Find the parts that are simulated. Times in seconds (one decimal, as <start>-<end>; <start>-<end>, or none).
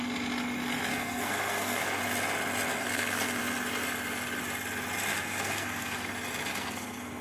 0.9-2.0; 2.7-3.4; 5.1-6.1; 6.5-7.2